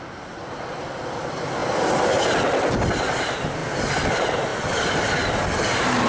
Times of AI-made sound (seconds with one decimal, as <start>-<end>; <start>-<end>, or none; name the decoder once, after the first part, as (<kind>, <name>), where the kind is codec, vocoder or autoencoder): none

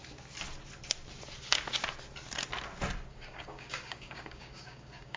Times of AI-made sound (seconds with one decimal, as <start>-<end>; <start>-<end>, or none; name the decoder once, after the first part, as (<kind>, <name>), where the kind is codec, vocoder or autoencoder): 3.1-5.2 (codec, DAC)